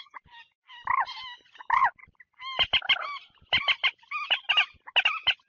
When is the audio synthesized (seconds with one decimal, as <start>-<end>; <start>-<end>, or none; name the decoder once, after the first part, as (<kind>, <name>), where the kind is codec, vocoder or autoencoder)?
1.8-4.5 (vocoder, BigVGAN v2)